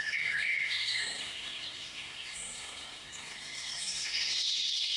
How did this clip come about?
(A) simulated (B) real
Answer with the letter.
A